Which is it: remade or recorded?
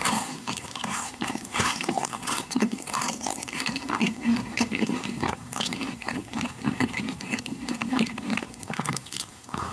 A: remade